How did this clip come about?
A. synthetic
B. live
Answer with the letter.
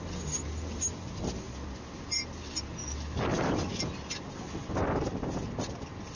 B